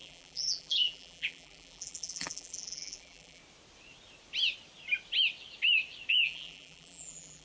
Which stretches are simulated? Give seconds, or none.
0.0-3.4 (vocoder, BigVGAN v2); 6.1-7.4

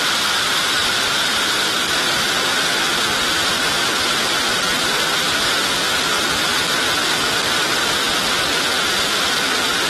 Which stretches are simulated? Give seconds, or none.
none

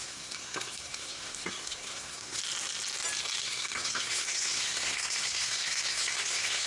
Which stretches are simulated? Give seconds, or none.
0.0-2.4 (codec, SNAC); 3.4-6.7

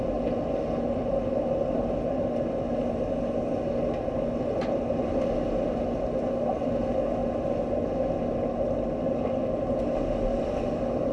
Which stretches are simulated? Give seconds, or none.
none

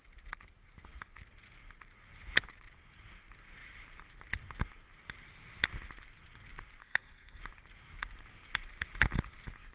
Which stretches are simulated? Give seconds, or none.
6.8-7.4 (codec, SNAC)

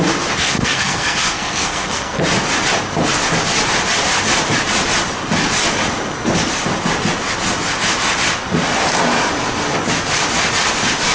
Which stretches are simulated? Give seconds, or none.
0.4-2.2 (codec, SNAC)

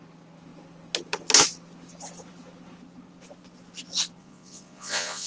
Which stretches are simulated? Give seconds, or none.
4.2-5.3 (vocoder, Vocos)

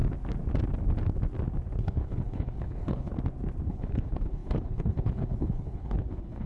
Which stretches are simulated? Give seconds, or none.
1.8-3.1 (codec, HILCodec); 3.7-6.5